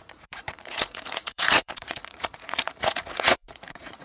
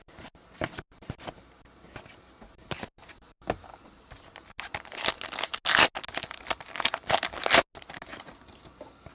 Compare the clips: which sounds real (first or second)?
second